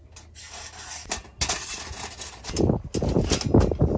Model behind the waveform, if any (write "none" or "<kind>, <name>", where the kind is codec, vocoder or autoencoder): none